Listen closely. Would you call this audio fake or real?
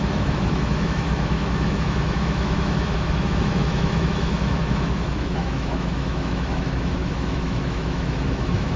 fake